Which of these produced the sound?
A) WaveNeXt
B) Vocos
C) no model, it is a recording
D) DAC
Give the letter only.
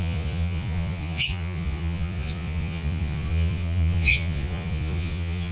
B